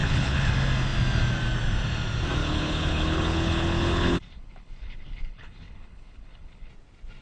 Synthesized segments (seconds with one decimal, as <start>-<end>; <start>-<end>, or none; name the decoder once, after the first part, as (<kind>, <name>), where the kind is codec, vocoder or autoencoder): 0.0-0.5 (codec, HILCodec); 2.4-6.7